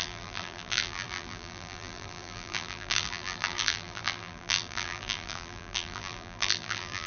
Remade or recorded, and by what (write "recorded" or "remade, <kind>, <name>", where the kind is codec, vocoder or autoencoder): remade, vocoder, BigVGAN v2